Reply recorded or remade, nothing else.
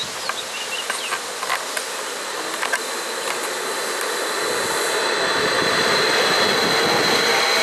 recorded